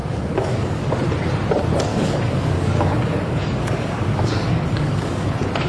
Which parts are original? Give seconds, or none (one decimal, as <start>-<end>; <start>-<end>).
0.9-1.9; 5.3-5.7